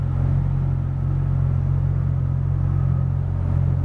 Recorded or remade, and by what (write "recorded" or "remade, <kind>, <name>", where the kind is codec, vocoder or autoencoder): recorded